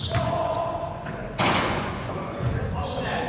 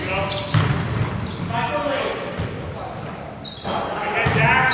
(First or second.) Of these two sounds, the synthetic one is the first